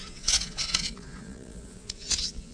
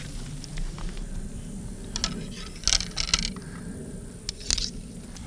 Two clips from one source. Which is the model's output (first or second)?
first